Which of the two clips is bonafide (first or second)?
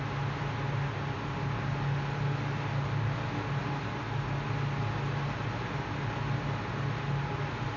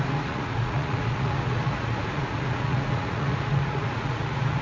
first